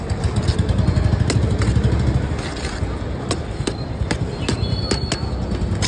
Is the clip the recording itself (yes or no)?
yes